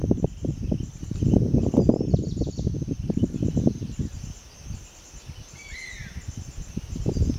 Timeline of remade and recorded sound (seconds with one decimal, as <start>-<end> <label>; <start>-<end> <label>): 0.0-7.4 recorded